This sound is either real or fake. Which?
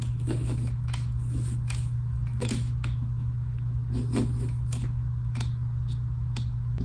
fake